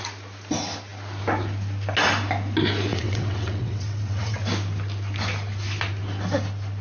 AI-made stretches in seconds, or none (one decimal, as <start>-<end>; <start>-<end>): 2.9-4.4